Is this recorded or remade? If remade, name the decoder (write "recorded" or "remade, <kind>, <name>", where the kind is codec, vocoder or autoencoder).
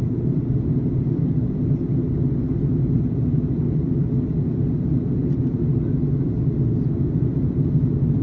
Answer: recorded